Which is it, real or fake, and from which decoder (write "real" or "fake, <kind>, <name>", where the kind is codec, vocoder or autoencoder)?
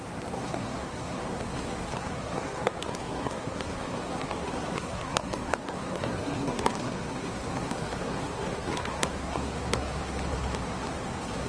fake, codec, SNAC